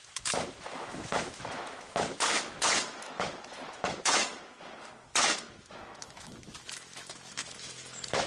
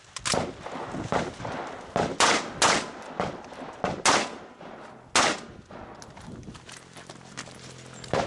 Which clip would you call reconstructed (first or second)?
first